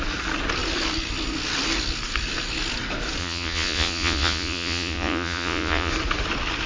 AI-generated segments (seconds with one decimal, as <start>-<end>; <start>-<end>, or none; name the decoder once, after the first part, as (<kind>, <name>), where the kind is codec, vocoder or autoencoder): 3.2-5.9 (vocoder, Vocos)